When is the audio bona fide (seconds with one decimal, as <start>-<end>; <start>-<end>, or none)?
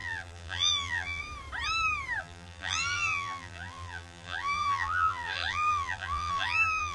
1.2-2.2